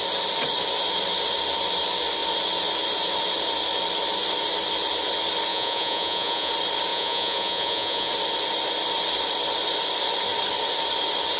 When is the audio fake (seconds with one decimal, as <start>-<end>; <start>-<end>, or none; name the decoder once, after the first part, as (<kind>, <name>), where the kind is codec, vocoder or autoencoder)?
5.5-6.5 (vocoder, Vocos); 6.9-8.1